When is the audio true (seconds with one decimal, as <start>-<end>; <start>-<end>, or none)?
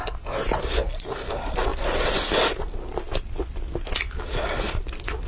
0.0-5.3